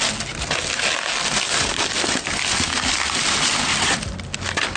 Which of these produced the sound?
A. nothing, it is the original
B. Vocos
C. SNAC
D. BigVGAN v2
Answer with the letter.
A